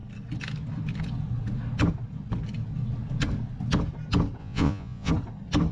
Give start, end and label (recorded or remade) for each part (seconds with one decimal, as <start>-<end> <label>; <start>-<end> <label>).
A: 0.0-4.4 recorded; 4.4-5.1 remade; 5.1-5.7 recorded